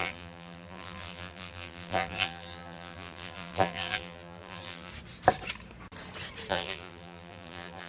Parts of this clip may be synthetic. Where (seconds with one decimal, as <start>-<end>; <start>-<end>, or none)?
0.0-4.9; 6.5-7.9